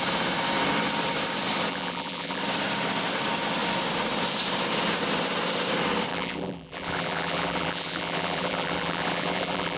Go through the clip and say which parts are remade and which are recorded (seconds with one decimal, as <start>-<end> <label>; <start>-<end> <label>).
0.0-1.7 recorded; 1.7-2.4 remade; 2.4-6.1 recorded; 6.1-9.8 remade